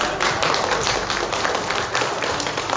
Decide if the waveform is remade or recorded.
recorded